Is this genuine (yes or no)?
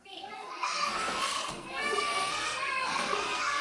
no